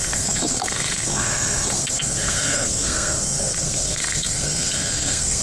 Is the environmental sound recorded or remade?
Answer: remade